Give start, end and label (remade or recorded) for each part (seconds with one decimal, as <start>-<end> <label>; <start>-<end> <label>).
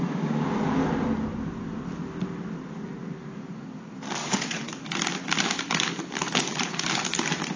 0.0-4.2 recorded; 4.2-4.7 remade; 4.7-7.6 recorded